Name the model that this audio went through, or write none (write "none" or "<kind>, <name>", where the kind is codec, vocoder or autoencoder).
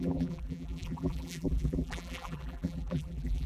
vocoder, BigVGAN v2